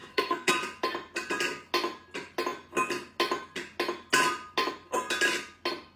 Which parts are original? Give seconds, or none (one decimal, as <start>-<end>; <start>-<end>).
0.5-6.0